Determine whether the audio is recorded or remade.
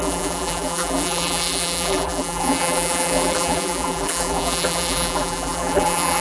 remade